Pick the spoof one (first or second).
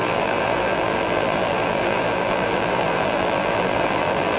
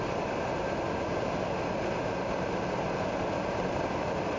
first